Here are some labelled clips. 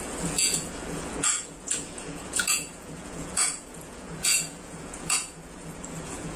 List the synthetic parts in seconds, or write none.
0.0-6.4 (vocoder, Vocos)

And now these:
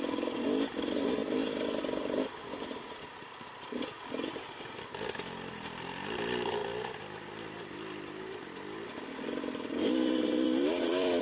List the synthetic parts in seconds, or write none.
0.0-1.2 (vocoder, BigVGAN v2); 5.5-6.6; 7.2-11.2

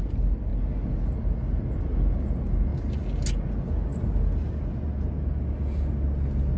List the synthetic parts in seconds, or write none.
none

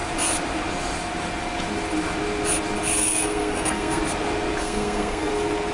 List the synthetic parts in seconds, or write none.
3.1-4.0 (codec, SNAC); 4.6-5.3

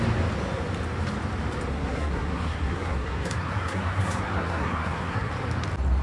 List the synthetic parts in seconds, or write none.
1.7-5.3 (codec, SNAC)

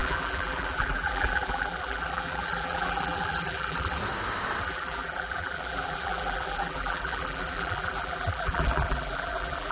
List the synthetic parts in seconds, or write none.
0.0-4.0 (vocoder, BigVGAN v2); 4.6-9.7

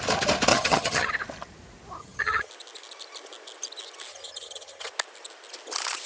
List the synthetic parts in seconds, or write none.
0.5-1.1 (vocoder, HiFi-GAN); 2.0-2.5; 4.1-4.9